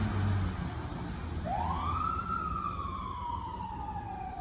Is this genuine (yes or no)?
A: yes